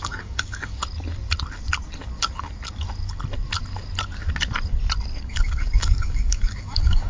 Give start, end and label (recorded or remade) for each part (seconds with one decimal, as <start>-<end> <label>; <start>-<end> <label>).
0.0-0.8 remade; 0.8-5.1 recorded; 5.1-7.1 remade

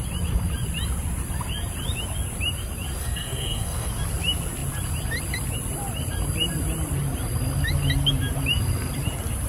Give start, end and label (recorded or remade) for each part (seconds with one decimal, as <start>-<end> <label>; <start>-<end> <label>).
0.0-3.0 recorded; 3.0-3.9 remade; 3.9-9.5 recorded

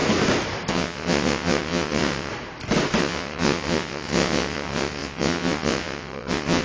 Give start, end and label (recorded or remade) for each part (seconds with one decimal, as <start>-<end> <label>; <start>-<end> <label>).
0.0-0.7 recorded; 0.7-2.3 remade; 2.3-3.0 recorded; 3.0-6.6 remade

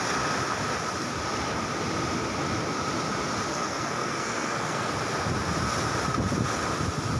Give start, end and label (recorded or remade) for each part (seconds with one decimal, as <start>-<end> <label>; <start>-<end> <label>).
0.0-3.5 recorded; 3.5-4.9 remade; 4.9-7.2 recorded

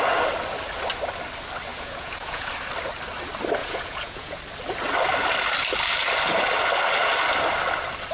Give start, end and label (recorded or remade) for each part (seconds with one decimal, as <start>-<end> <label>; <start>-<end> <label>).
0.0-1.7 recorded; 1.7-2.5 remade; 2.5-3.6 recorded; 3.6-4.4 remade; 4.4-8.1 recorded

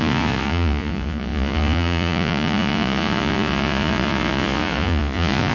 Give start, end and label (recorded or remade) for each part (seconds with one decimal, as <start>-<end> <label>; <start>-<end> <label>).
0.0-5.5 remade